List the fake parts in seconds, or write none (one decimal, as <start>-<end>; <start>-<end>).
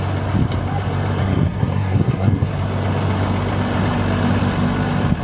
1.2-2.5